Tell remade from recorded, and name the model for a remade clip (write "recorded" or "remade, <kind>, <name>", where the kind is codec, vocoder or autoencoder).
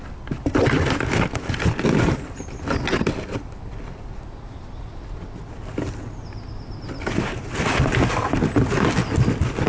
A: recorded